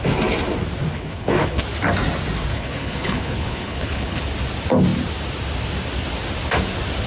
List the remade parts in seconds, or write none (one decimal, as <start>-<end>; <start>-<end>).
0.9-1.6; 2.5-4.2